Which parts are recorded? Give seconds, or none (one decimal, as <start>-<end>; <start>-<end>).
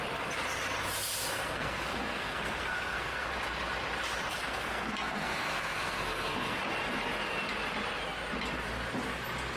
0.0-1.2; 3.3-4.3; 6.6-9.6